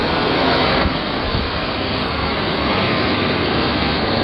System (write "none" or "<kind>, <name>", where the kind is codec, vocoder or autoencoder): codec, SNAC